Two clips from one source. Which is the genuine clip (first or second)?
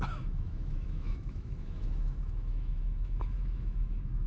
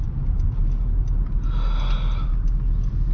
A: second